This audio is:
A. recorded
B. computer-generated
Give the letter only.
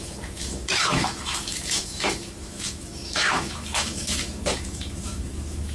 B